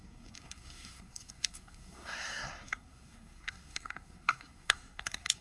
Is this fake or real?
fake